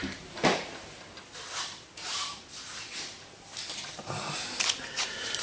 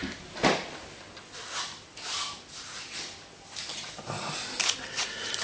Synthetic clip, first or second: first